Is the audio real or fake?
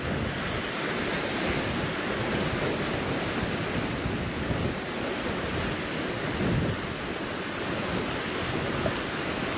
real